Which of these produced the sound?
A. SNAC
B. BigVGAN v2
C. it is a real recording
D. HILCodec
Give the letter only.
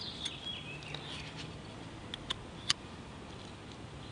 C